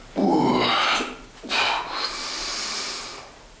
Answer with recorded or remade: recorded